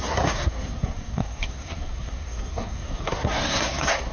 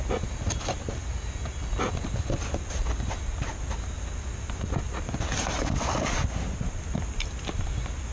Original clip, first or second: second